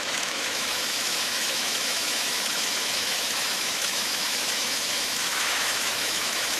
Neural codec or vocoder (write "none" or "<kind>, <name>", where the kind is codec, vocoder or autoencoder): autoencoder, DAC-VAE